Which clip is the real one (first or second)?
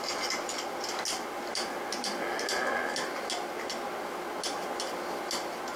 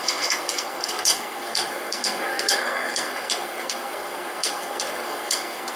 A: first